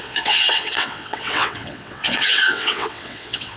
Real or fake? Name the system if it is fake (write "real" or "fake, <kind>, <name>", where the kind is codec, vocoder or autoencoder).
fake, vocoder, WaveNeXt